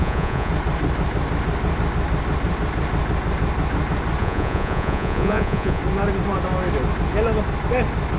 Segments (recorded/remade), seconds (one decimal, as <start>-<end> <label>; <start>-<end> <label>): 0.0-0.5 remade; 0.5-4.2 recorded; 4.2-5.8 remade; 5.8-8.2 recorded